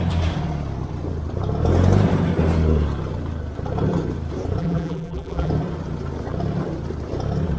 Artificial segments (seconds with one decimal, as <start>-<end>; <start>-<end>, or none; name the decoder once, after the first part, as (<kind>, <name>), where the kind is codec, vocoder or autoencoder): 4.6-5.5 (vocoder, BigVGAN v2)